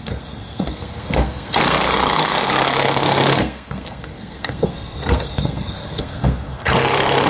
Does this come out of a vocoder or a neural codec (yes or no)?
yes